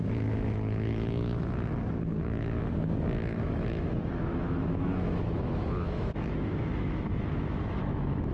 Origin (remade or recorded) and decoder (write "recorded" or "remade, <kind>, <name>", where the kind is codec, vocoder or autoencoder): remade, autoencoder, DAC-VAE